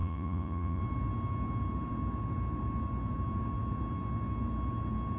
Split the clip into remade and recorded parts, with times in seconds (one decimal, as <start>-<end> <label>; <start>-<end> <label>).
0.0-0.8 remade; 0.8-5.2 recorded